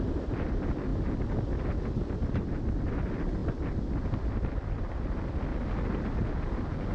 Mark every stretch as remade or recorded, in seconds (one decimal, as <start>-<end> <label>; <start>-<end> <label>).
0.0-0.9 remade; 0.9-2.6 recorded; 2.6-3.4 remade; 3.4-4.4 recorded; 4.4-5.5 remade; 5.5-6.4 recorded; 6.4-6.9 remade